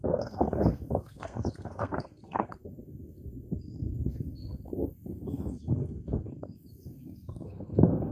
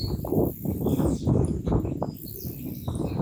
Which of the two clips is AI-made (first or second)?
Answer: first